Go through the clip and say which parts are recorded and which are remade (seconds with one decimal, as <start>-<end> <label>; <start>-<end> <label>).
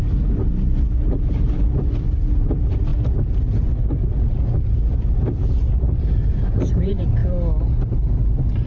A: 0.0-2.9 remade; 2.9-5.7 recorded; 5.7-7.2 remade; 7.2-8.7 recorded